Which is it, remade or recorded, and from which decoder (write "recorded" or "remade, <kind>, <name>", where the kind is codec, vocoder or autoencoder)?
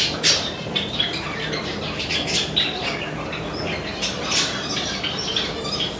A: remade, vocoder, BigVGAN v2